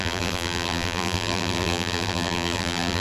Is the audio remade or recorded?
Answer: remade